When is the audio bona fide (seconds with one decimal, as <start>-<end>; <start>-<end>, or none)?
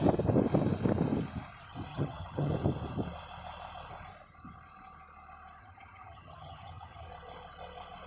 0.0-1.9; 2.5-5.6; 7.1-8.1